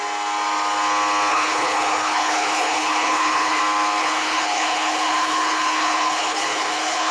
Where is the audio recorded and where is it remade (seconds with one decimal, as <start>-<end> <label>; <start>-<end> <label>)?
0.0-1.3 recorded; 1.3-3.6 remade; 3.6-4.0 recorded; 4.0-7.1 remade